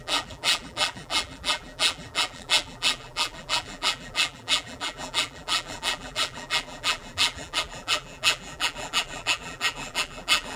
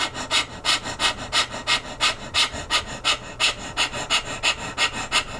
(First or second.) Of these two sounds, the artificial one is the first